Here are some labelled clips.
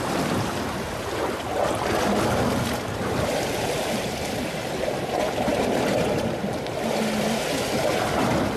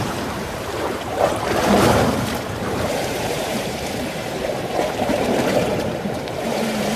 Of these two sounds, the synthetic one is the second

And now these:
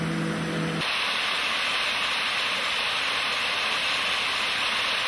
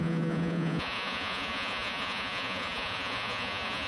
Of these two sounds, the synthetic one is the second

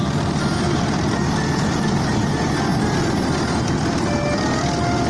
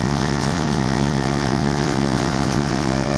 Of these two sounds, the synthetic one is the second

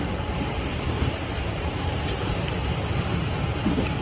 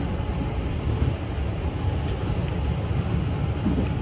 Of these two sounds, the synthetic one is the first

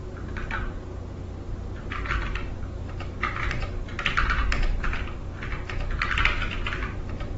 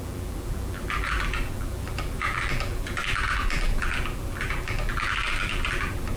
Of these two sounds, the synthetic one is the second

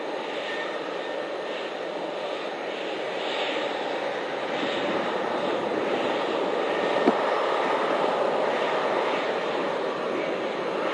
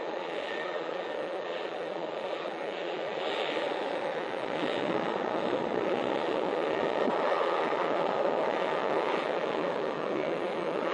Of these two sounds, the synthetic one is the second